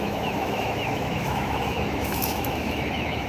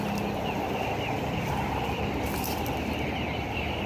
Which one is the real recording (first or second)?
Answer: second